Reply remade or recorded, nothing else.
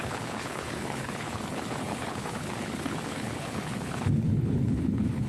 remade